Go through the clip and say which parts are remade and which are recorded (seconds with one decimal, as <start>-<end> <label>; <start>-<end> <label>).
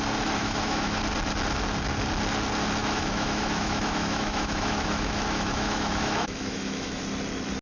0.0-0.4 recorded; 0.4-1.0 remade; 1.0-2.8 recorded; 2.8-7.0 remade; 7.0-7.6 recorded